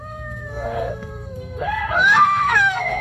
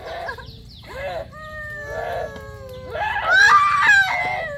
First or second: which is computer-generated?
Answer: first